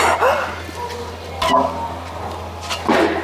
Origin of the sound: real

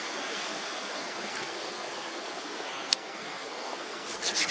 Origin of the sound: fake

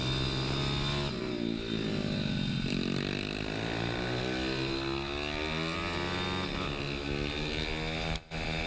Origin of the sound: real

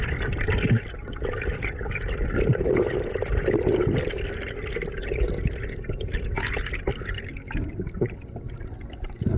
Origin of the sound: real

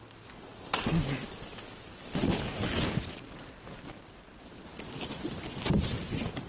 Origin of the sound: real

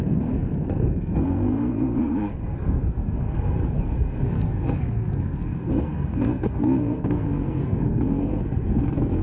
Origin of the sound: fake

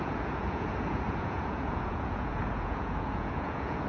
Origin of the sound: fake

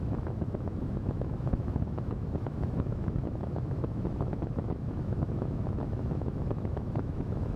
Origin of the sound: fake